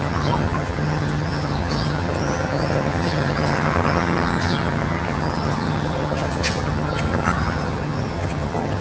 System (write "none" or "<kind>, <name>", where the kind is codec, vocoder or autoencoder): vocoder, HiFi-GAN